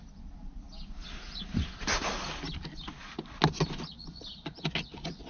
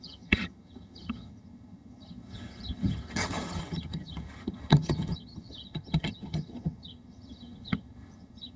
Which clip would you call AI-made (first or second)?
second